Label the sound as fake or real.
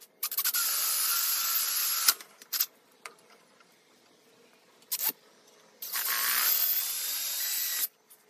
fake